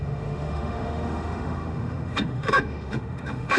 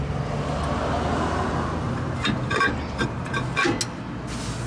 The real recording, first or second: second